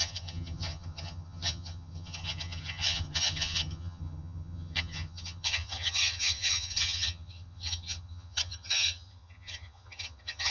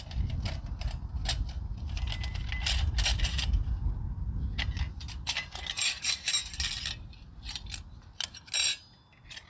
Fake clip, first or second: first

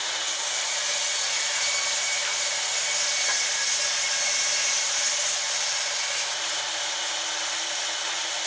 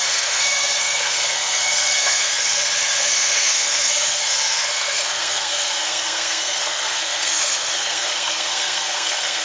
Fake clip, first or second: second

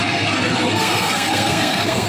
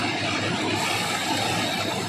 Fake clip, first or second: first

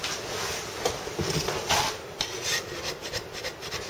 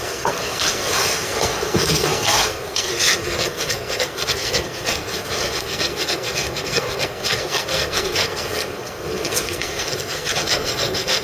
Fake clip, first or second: second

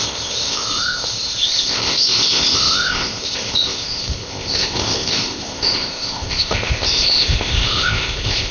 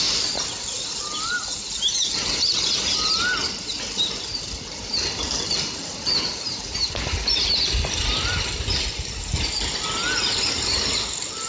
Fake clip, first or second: first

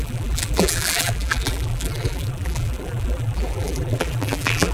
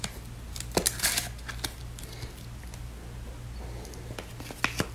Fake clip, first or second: first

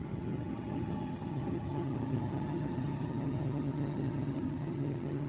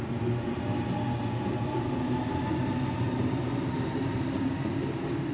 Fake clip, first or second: first